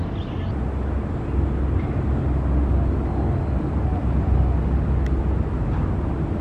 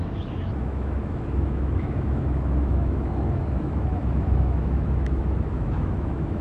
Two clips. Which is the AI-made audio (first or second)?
second